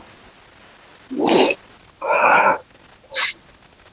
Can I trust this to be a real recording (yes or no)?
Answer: yes